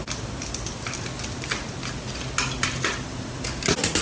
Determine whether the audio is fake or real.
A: real